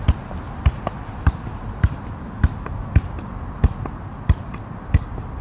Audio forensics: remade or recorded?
recorded